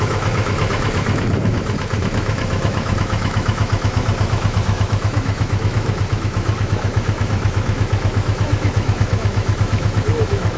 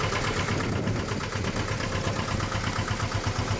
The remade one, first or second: first